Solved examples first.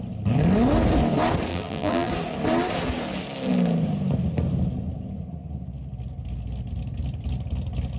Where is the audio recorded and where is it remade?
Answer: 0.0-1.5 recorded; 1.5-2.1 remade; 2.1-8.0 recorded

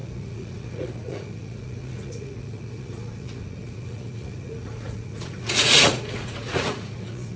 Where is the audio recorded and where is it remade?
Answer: 0.0-7.4 remade

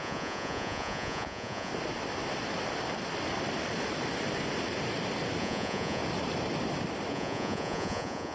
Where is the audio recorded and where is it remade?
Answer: 0.0-1.7 remade; 1.7-5.4 recorded; 5.4-6.0 remade; 6.0-7.1 recorded; 7.1-8.3 remade

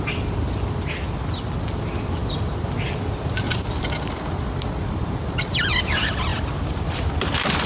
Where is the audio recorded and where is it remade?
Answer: 0.0-7.7 recorded

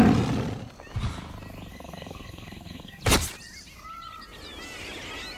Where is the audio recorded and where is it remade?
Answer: 0.0-1.7 recorded; 1.7-3.0 remade; 3.0-5.4 recorded

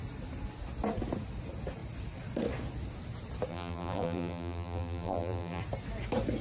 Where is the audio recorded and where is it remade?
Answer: 0.0-3.5 recorded; 3.5-5.6 remade; 5.6-6.4 recorded

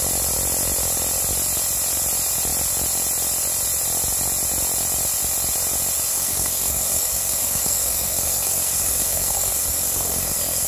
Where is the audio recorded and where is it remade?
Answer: 0.0-6.1 recorded; 6.1-10.7 remade

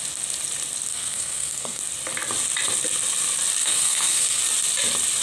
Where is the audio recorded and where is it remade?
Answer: 0.0-0.9 recorded; 0.9-1.8 remade; 1.8-3.6 recorded; 3.6-4.4 remade; 4.4-5.2 recorded